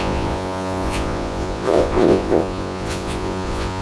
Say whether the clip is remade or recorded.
remade